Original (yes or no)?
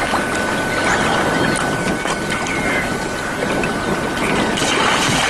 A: yes